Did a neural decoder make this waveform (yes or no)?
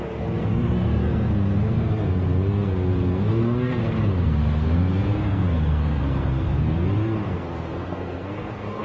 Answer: yes